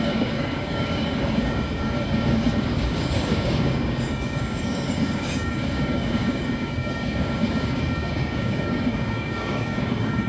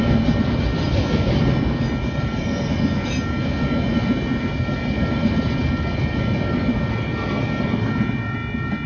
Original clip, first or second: second